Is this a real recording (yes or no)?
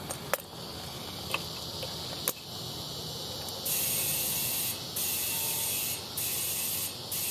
yes